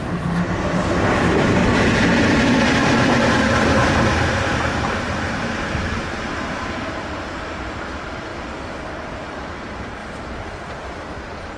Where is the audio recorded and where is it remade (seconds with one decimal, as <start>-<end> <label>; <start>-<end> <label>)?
0.0-1.6 remade; 1.6-2.4 recorded; 2.4-8.3 remade; 8.3-8.9 recorded; 8.9-10.0 remade; 10.0-11.6 recorded

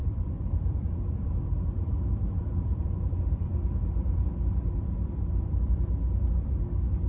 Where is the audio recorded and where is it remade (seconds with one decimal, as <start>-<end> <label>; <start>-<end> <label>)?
0.0-3.5 remade; 3.5-4.8 recorded; 4.8-7.1 remade

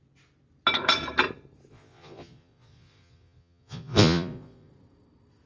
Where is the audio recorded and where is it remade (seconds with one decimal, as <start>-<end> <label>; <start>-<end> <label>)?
0.0-1.7 recorded; 1.7-4.7 remade; 4.7-5.5 recorded

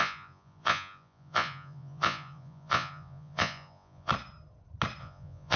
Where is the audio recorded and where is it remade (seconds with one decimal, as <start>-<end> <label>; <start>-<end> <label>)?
0.0-4.1 remade; 4.1-5.0 recorded; 5.0-5.6 remade

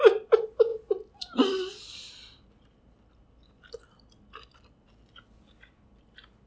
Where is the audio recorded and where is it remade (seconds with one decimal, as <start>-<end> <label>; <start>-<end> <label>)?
0.0-6.5 recorded

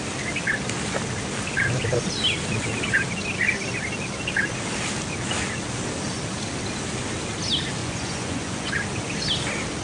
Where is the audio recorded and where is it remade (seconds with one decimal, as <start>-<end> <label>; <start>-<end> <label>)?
0.0-7.8 recorded; 7.8-8.7 remade; 8.7-9.8 recorded

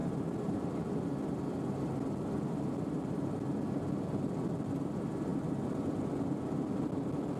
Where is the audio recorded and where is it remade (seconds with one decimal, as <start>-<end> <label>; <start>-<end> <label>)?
0.0-0.9 remade; 0.9-7.4 recorded